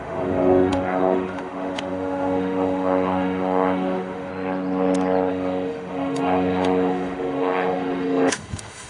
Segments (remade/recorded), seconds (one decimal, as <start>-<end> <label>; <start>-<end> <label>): 0.0-4.3 remade; 4.3-5.3 recorded; 5.3-8.9 remade